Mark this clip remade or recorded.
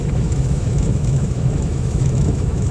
remade